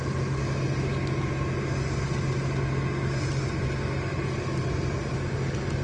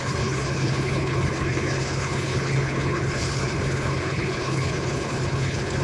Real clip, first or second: first